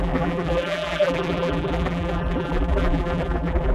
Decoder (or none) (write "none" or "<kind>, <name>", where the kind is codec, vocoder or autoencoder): vocoder, BigVGAN v2